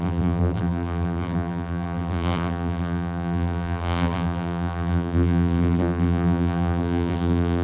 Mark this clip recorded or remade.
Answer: remade